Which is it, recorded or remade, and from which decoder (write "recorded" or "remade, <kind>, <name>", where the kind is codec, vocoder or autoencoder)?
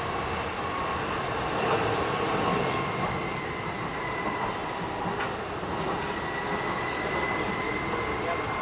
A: recorded